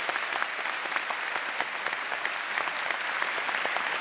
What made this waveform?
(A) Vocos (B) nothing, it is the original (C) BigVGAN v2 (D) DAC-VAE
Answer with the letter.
B